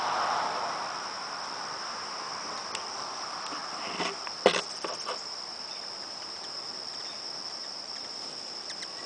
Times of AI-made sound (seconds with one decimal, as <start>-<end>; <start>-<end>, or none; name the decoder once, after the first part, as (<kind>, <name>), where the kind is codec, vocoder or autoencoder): none